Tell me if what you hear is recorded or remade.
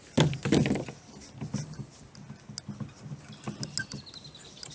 recorded